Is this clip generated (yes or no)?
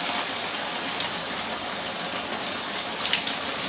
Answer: no